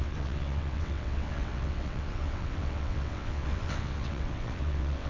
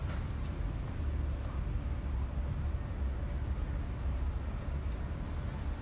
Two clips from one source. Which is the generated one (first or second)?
first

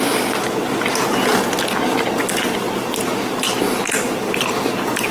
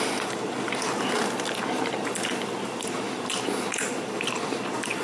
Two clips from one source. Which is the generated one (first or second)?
second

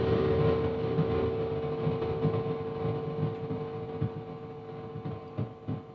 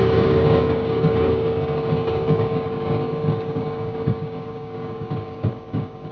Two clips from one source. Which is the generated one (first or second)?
second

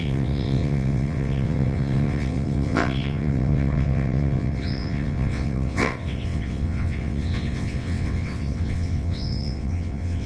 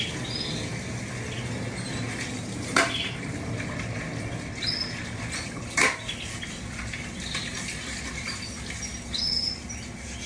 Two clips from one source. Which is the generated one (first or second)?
first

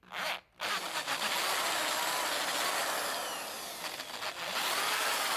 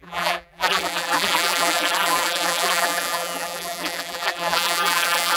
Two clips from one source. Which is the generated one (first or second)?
second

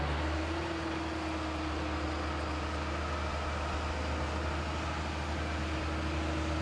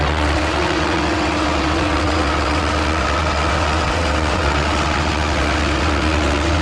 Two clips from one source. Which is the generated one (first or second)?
second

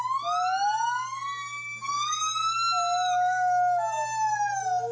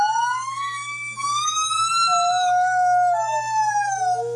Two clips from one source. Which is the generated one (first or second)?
second